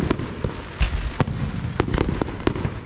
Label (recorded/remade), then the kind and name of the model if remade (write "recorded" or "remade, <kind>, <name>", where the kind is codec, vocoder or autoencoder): recorded